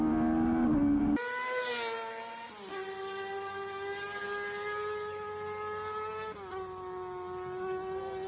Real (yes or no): yes